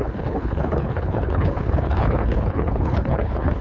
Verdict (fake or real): fake